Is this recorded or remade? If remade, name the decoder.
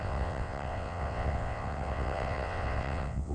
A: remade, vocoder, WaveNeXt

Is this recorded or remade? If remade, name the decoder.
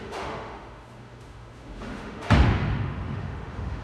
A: remade, autoencoder, DAC-VAE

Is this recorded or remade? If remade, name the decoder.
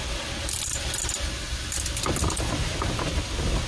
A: recorded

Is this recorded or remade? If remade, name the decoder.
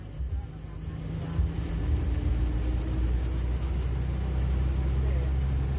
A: recorded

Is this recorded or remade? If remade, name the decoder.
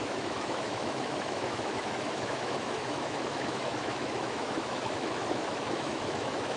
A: remade, autoencoder, DAC-VAE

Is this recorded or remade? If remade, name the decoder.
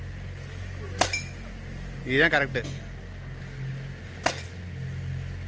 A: recorded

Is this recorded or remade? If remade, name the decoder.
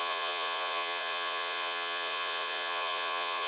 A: remade, vocoder, Vocos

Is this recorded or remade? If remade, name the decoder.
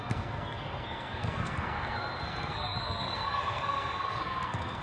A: remade, codec, SNAC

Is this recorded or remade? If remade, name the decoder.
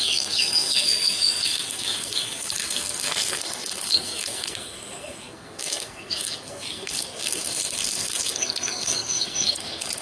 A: remade, codec, SNAC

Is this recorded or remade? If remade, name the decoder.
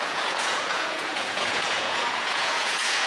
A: remade, vocoder, Vocos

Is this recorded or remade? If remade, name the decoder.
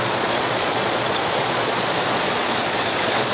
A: remade, vocoder, Vocos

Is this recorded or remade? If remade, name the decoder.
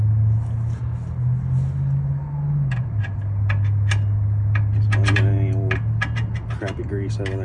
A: recorded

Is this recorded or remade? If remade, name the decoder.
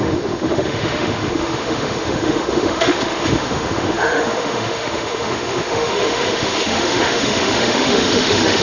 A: remade, autoencoder, DAC-VAE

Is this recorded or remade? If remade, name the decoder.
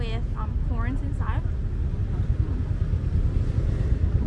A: recorded